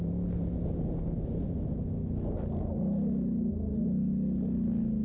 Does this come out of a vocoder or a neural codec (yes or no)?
no